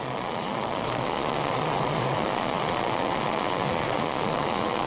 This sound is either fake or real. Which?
fake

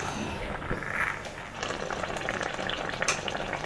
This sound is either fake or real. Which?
real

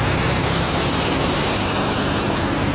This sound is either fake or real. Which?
real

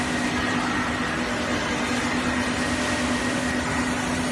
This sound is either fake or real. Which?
real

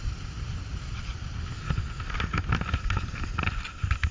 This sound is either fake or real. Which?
real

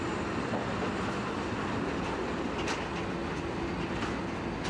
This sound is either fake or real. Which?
real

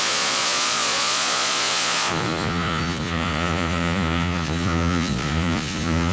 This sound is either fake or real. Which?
fake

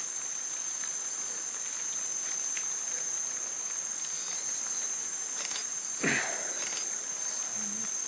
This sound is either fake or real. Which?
real